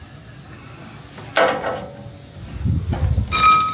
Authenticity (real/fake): real